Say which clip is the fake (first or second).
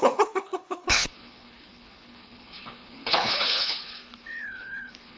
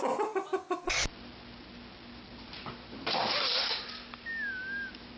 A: first